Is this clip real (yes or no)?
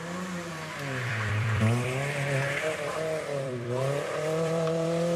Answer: no